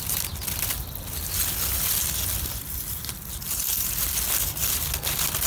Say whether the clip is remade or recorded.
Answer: recorded